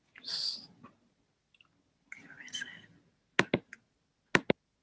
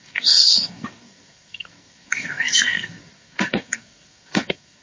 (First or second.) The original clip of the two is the first